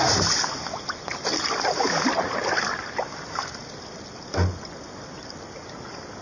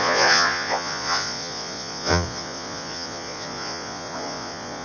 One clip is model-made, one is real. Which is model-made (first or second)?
second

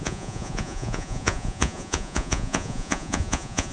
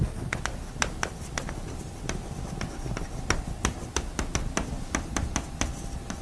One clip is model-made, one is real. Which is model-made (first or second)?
first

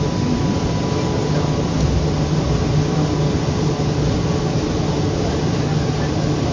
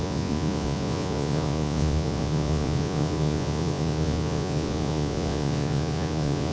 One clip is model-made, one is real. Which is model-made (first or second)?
second